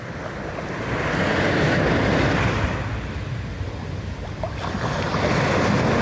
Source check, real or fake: real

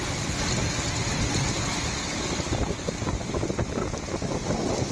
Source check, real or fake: real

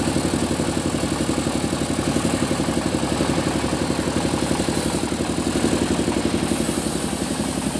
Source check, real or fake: real